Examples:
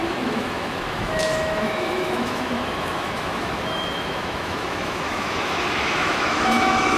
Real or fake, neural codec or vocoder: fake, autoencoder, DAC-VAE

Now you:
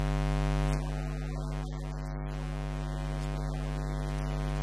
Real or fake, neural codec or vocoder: real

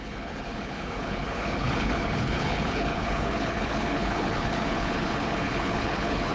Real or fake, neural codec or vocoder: fake, codec, HILCodec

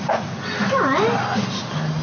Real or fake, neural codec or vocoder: real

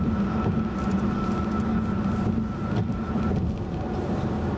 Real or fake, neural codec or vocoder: real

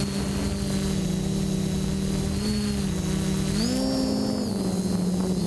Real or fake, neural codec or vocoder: real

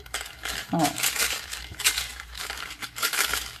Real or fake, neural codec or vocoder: fake, codec, DAC